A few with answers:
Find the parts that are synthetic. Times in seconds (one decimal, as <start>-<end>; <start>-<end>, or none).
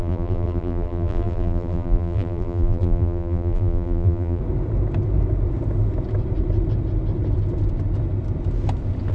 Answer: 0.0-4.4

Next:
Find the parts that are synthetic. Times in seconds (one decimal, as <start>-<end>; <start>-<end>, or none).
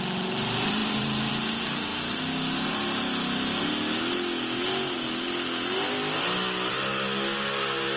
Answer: 0.8-1.3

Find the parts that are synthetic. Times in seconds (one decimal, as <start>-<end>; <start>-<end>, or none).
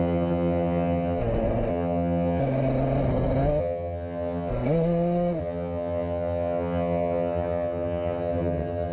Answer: 0.0-1.2; 1.7-2.4; 3.6-4.5; 5.4-8.9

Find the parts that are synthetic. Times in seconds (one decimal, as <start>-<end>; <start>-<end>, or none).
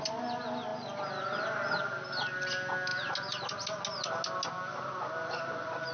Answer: none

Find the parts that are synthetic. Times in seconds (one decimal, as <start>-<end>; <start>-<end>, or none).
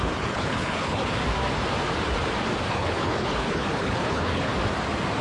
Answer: 0.0-1.2; 2.7-4.5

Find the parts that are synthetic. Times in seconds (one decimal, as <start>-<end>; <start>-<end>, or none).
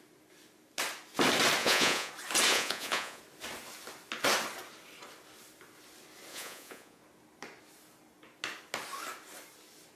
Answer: 1.6-2.1; 2.5-3.2; 6.3-7.0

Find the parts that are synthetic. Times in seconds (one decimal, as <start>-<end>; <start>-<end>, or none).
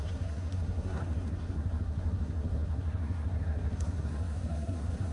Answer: 0.0-5.1